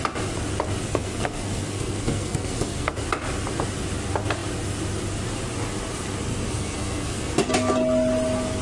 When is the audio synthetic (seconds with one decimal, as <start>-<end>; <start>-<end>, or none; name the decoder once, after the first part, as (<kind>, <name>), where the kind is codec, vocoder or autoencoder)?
0.8-3.0 (codec, SNAC); 6.3-7.5